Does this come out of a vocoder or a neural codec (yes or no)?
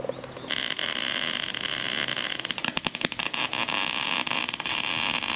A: no